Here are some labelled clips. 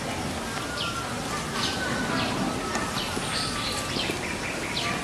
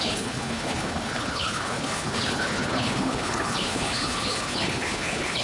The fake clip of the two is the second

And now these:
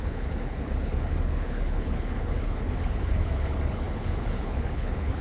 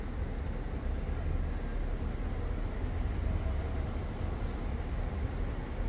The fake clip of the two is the first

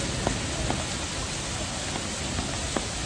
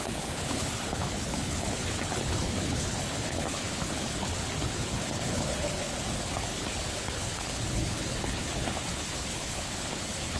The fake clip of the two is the second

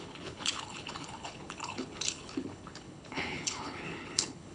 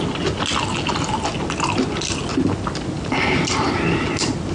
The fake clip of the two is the first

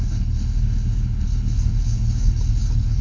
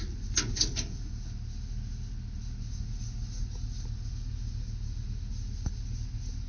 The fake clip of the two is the first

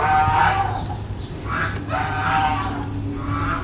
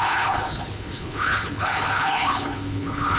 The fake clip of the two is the second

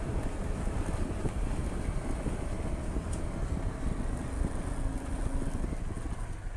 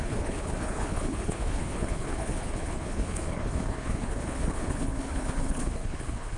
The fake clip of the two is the second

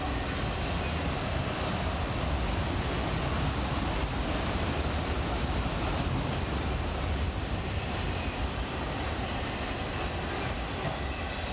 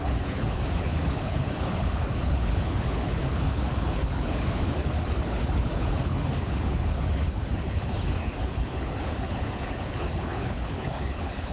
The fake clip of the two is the second